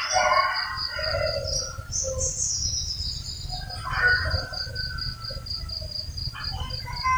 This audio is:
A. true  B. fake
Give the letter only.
A